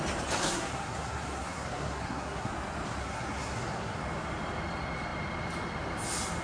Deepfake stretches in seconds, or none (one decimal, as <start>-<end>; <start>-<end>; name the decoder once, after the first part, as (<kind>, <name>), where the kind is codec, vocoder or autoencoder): 0.4-2.5 (codec, SNAC); 3.0-4.0